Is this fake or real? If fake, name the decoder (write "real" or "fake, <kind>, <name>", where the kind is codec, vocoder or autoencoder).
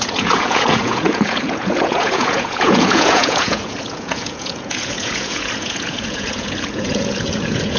fake, vocoder, Vocos